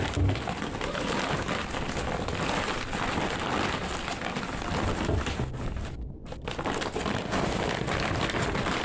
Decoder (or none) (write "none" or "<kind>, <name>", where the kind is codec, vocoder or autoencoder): none